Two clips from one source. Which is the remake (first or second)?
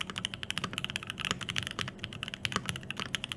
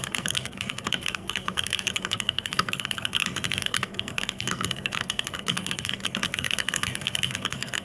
second